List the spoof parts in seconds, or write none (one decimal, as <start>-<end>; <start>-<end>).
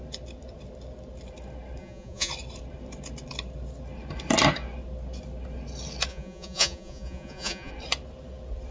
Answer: 1.8-2.3; 6.1-7.7